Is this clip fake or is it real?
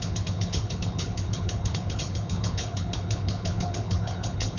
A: fake